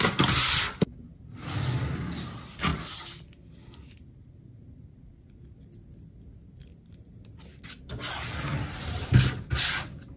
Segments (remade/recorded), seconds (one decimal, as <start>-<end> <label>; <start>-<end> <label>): 0.0-8.5 recorded; 8.5-9.0 remade; 9.0-10.2 recorded